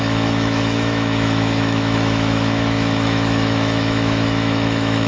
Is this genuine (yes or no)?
no